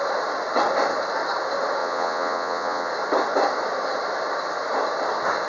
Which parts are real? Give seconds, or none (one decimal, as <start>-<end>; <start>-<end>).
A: 0.0-1.8; 2.9-5.5